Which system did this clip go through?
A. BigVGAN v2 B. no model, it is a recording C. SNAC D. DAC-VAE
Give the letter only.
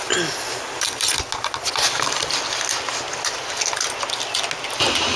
B